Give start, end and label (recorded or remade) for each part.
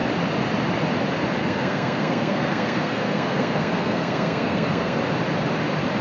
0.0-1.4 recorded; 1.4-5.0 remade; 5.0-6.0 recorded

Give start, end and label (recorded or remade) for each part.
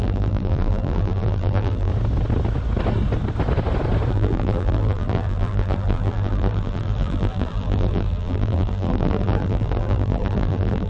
0.0-1.9 remade; 1.9-4.1 recorded; 4.1-10.9 remade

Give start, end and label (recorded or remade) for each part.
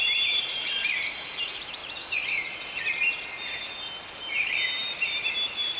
0.0-1.8 remade; 1.8-4.3 recorded; 4.3-5.8 remade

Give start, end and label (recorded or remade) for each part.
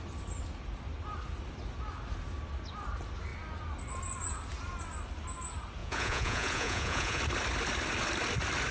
0.0-5.8 recorded; 5.8-7.2 remade; 7.2-8.7 recorded